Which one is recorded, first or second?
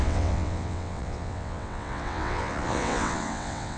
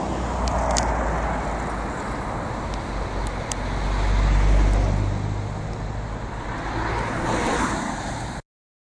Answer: second